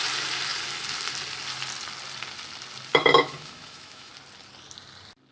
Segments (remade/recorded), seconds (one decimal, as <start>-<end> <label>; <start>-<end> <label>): 0.0-2.9 recorded; 2.9-4.1 remade; 4.1-5.3 recorded